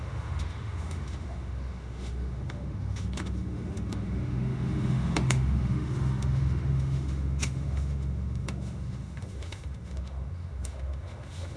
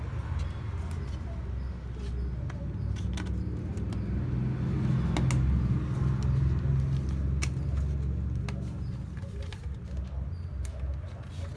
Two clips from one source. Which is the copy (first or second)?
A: first